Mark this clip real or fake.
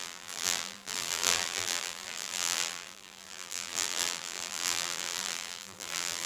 fake